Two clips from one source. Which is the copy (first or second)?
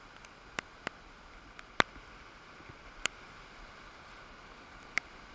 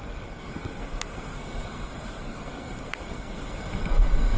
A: second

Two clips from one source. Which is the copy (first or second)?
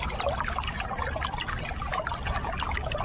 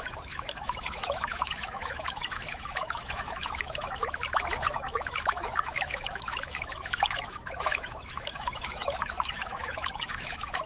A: second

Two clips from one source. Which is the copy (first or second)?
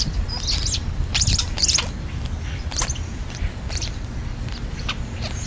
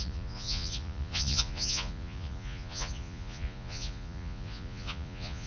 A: second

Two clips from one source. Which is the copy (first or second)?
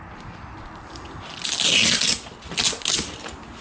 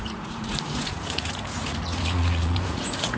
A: second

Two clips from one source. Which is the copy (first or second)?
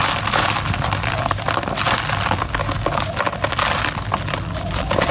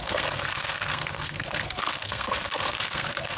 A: second